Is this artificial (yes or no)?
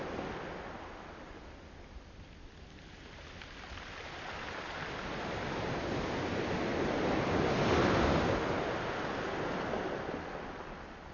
no